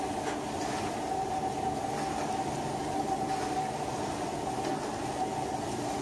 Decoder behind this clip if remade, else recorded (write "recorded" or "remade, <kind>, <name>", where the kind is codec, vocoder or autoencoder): recorded